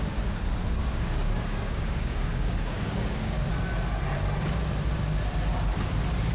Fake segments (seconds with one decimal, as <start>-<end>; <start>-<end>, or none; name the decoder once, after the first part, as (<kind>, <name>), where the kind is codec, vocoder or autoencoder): 0.8-3.5 (codec, DAC)